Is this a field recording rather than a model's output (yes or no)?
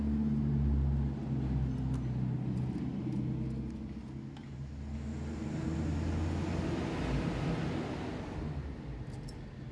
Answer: yes